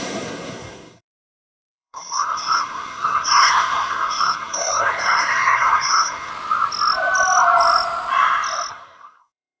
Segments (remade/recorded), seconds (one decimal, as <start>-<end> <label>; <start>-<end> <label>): 0.0-6.3 remade; 6.3-8.7 recorded; 8.7-9.6 remade